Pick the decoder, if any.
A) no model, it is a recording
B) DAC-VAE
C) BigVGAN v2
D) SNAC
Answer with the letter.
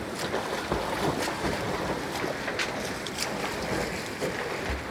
A